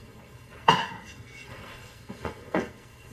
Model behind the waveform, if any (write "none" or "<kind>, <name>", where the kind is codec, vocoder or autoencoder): codec, SNAC